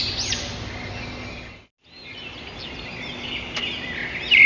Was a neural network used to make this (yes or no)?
no